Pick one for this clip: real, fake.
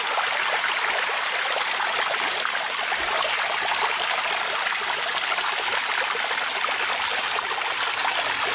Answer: real